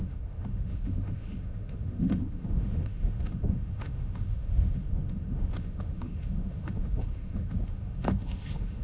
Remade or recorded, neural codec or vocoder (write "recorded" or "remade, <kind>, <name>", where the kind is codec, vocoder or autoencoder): remade, autoencoder, DAC-VAE